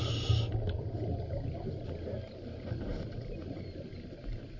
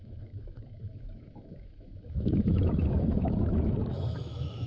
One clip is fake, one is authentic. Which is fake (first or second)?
second